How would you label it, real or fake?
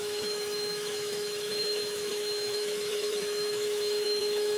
fake